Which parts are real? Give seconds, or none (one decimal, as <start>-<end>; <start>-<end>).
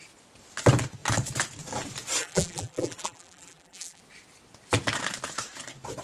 0.0-2.2; 4.0-6.0